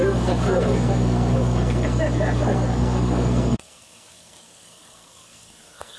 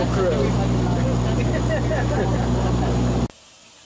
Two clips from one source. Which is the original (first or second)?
second